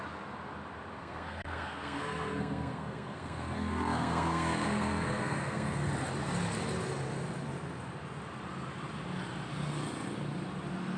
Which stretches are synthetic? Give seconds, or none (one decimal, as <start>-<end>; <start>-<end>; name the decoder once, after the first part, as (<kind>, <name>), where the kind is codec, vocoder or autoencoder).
1.0-5.9 (codec, SNAC)